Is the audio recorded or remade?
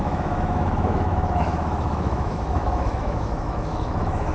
remade